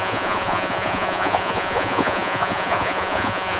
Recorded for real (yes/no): no